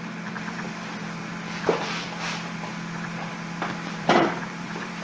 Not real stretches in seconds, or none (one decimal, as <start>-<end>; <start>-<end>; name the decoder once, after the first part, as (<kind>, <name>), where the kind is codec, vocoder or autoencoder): 0.0-5.0 (vocoder, BigVGAN v2)